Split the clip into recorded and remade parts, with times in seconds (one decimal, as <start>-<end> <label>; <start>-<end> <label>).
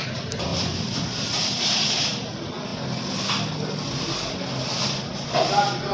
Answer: 0.0-5.9 recorded